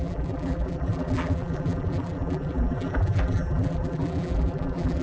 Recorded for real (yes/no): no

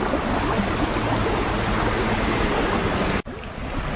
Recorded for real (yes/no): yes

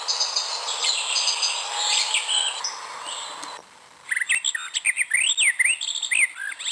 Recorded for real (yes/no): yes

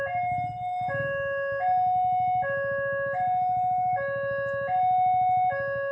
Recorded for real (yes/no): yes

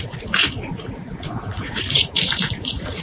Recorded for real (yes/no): no